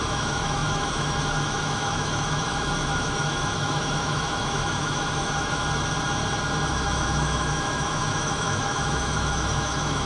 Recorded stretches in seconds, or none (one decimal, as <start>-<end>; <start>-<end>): 5.6-6.7